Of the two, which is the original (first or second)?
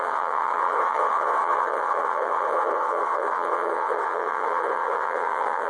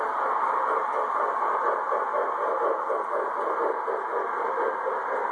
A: second